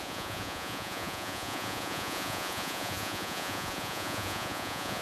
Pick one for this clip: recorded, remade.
remade